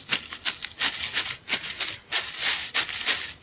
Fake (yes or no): no